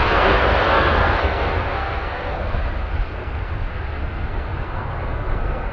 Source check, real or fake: fake